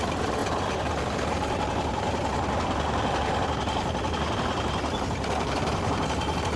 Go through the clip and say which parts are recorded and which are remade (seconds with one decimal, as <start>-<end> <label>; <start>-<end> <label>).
0.0-6.6 remade